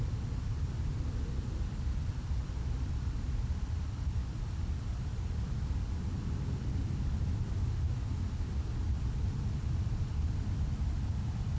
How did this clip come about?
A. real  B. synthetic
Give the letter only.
A